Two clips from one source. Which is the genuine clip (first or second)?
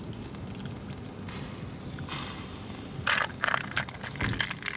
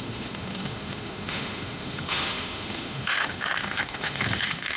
first